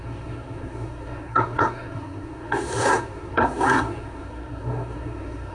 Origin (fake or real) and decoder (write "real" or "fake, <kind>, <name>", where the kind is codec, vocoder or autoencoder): fake, codec, SNAC